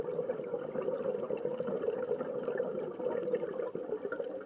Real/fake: real